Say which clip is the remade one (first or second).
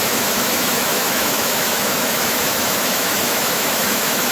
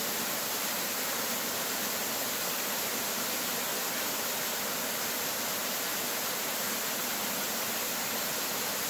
first